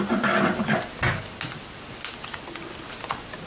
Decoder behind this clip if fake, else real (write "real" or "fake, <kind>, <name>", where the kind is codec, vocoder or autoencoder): real